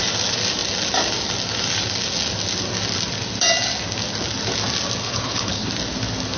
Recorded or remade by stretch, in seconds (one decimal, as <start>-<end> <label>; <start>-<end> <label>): 0.0-5.0 recorded; 5.0-5.7 remade; 5.7-6.4 recorded